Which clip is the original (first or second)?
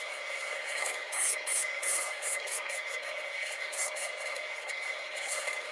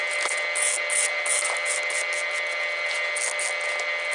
second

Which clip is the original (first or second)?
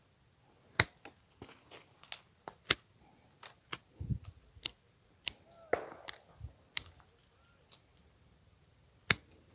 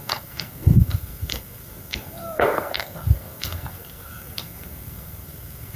first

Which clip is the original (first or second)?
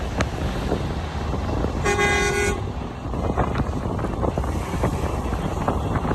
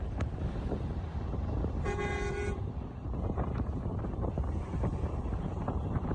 first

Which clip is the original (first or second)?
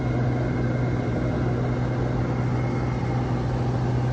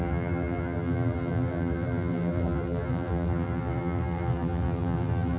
first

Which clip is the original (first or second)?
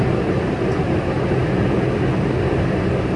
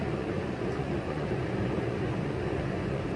first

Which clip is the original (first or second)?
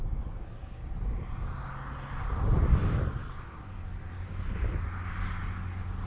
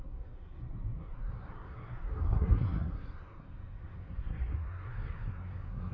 first